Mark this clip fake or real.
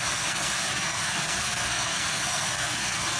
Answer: fake